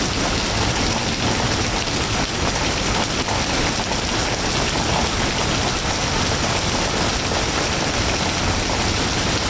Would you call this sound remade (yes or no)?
no